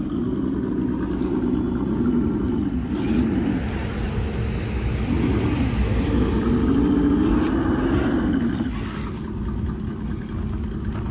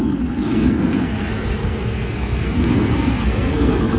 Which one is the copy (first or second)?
second